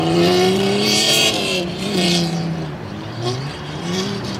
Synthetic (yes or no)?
yes